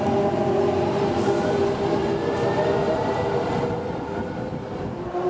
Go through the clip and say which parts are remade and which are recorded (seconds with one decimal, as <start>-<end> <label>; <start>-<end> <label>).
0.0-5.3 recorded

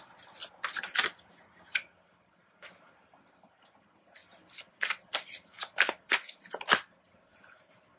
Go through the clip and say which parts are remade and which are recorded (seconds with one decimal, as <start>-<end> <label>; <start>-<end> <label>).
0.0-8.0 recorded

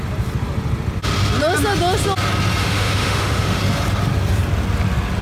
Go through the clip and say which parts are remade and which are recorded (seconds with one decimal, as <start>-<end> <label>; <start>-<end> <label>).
0.0-2.6 recorded; 2.6-3.6 remade; 3.6-5.2 recorded